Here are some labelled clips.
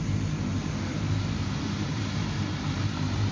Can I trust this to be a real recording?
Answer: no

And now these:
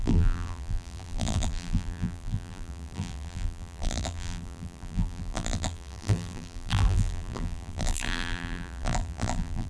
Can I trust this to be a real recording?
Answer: no